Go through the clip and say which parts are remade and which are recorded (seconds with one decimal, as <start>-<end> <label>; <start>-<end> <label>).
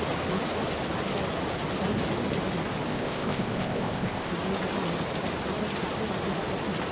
0.0-2.9 recorded; 2.9-4.3 remade; 4.3-6.9 recorded